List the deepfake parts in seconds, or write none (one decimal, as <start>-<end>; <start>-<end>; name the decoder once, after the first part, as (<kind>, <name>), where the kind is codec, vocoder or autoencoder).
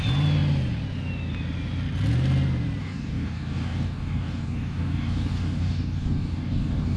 2.8-7.0 (codec, DAC)